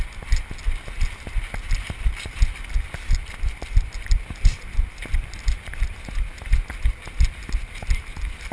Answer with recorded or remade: recorded